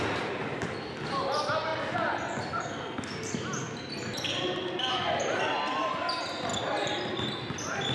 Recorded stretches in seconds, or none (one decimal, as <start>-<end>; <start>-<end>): 0.0-7.9